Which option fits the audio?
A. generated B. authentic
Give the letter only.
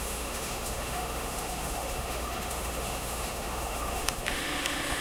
A